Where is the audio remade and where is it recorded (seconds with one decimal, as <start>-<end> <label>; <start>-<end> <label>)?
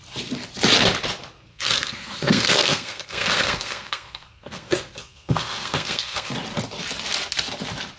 0.0-1.5 recorded; 1.5-6.3 remade; 6.3-8.0 recorded